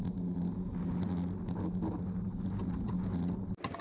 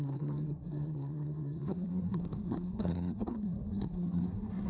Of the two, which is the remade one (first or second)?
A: second